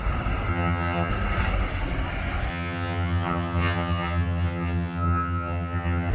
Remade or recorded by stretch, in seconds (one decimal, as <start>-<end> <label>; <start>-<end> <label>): 0.0-0.5 recorded; 0.5-1.1 remade; 1.1-2.5 recorded; 2.5-6.1 remade